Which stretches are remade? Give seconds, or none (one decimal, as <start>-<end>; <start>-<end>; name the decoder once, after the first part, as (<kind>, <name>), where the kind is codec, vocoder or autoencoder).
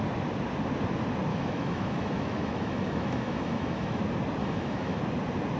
1.3-4.0 (autoencoder, DAC-VAE); 4.4-5.0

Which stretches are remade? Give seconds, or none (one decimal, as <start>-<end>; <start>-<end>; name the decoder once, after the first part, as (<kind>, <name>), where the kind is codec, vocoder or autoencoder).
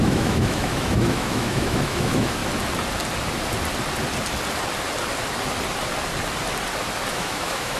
0.0-2.4 (autoencoder, DAC-VAE); 7.1-7.8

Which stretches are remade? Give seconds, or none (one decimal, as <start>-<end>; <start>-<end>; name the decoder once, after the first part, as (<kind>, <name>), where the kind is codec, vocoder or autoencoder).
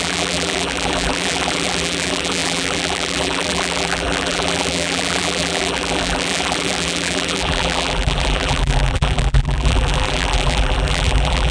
0.0-11.5 (vocoder, BigVGAN v2)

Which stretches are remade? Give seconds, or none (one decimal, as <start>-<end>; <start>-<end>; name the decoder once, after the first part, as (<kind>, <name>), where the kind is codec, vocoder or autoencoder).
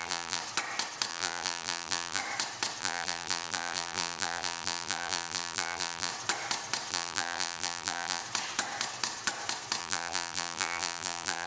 0.0-0.4 (vocoder, BigVGAN v2); 1.1-2.2; 2.8-6.1; 6.9-8.2; 9.8-11.5